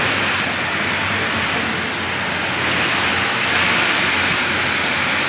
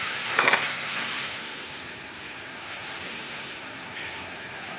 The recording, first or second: first